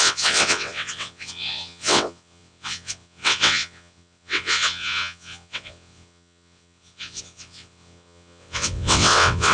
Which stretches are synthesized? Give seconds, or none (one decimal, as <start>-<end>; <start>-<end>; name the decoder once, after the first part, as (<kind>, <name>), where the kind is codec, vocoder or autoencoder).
0.0-9.5 (vocoder, WaveNeXt)